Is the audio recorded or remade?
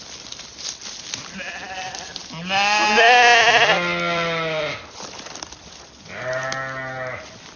recorded